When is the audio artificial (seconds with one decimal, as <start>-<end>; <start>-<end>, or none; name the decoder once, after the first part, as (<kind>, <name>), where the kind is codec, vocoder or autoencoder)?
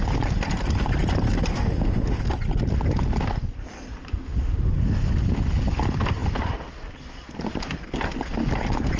1.5-2.2 (autoencoder, DAC-VAE); 4.1-4.7